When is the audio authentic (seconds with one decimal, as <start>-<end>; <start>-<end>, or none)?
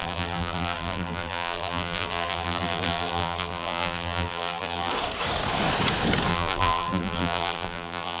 4.9-6.3